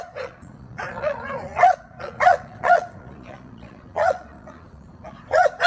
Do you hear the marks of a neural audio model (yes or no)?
yes